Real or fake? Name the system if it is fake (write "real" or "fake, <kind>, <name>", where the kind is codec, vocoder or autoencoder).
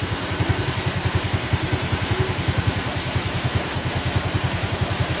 real